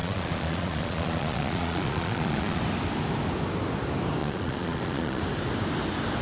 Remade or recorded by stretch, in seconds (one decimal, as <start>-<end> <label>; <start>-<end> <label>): 0.0-2.6 remade; 2.6-4.2 recorded; 4.2-5.2 remade; 5.2-6.2 recorded